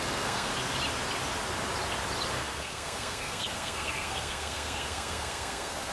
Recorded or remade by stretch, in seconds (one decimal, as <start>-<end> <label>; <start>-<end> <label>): 0.0-0.5 remade; 0.5-2.3 recorded; 2.3-5.9 remade